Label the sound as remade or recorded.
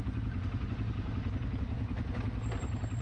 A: recorded